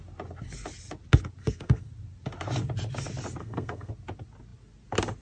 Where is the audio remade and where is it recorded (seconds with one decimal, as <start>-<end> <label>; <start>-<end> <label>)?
0.0-1.4 recorded; 1.4-1.9 remade; 1.9-3.4 recorded; 3.4-3.9 remade; 3.9-5.2 recorded